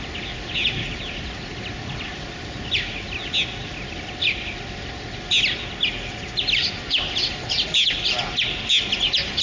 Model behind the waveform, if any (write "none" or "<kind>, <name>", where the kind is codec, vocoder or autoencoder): none